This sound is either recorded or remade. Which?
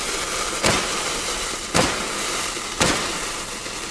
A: recorded